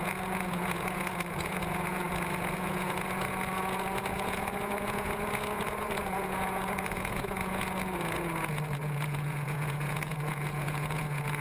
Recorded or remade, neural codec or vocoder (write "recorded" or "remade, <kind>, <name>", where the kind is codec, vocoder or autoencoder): remade, vocoder, Vocos